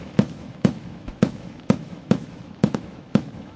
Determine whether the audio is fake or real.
fake